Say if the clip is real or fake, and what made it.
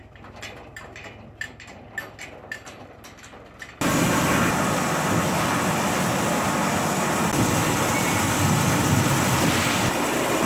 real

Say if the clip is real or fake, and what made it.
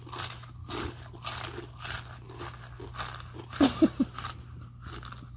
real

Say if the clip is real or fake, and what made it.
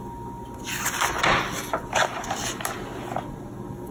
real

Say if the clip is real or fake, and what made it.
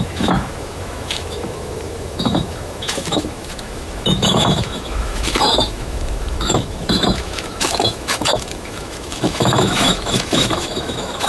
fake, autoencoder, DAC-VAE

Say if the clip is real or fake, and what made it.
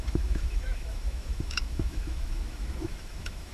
fake, autoencoder, DAC-VAE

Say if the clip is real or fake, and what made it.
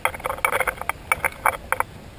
real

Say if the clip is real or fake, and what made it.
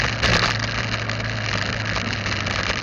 real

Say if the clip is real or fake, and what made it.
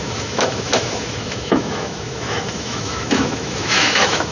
fake, autoencoder, DAC-VAE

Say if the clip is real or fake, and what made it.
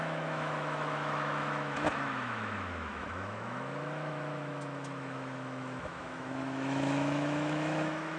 fake, autoencoder, DAC-VAE